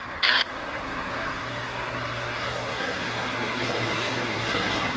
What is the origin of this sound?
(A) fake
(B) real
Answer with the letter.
A